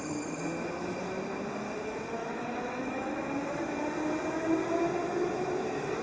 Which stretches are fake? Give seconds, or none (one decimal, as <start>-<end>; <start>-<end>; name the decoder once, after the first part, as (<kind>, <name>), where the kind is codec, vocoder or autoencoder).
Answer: 2.2-3.2 (autoencoder, DAC-VAE)